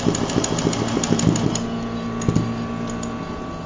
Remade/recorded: recorded